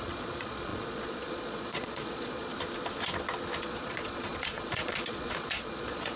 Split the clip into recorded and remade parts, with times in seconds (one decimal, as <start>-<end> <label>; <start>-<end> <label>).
0.0-2.5 remade; 2.5-3.6 recorded; 3.6-6.2 remade